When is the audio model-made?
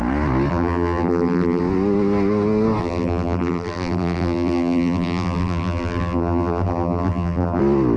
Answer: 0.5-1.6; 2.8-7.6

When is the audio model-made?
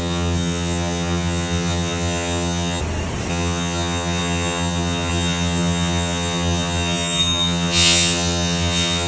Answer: 0.0-2.8; 3.3-9.1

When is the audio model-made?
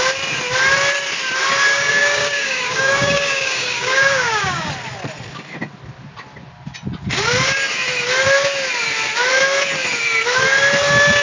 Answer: 1.7-4.7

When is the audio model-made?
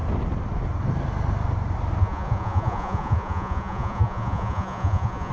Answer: 2.0-5.3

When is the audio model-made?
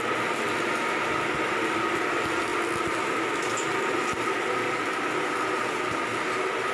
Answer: none